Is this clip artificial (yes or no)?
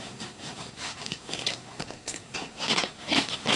yes